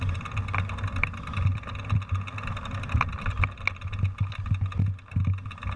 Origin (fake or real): real